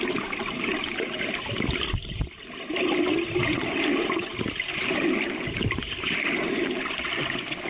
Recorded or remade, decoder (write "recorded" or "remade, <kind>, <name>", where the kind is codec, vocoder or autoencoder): recorded